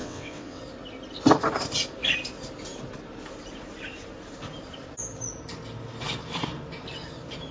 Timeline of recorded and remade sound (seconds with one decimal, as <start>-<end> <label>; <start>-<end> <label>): 0.0-0.6 remade; 0.6-7.5 recorded